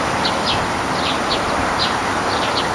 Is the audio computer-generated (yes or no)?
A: no